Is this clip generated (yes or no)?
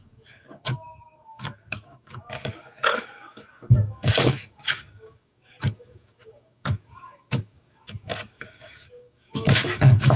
yes